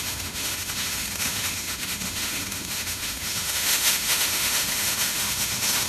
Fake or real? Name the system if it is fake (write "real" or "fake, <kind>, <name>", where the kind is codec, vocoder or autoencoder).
fake, autoencoder, DAC-VAE